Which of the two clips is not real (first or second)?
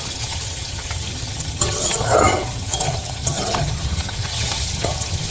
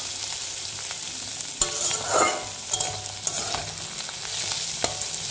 first